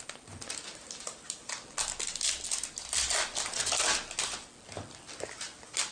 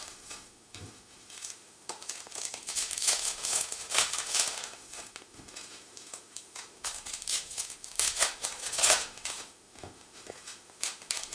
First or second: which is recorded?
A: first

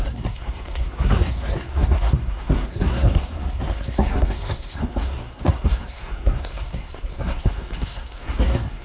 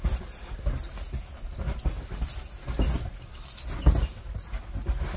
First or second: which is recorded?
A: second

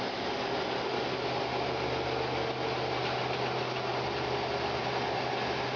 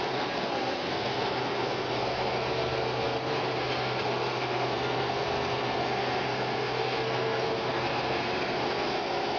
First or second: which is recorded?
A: first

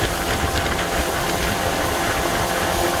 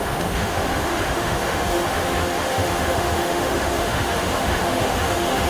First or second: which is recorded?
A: first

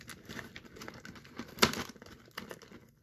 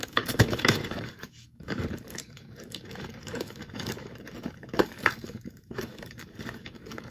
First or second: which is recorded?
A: first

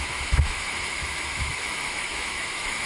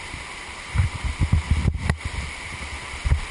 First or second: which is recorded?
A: second